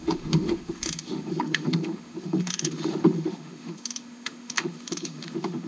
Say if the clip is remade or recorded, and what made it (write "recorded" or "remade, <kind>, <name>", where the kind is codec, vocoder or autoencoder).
remade, autoencoder, DAC-VAE